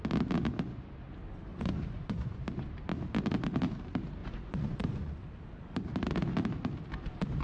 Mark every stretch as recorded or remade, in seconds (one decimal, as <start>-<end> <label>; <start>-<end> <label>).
0.0-1.5 recorded; 1.5-2.4 remade; 2.4-4.2 recorded; 4.2-5.2 remade; 5.2-7.4 recorded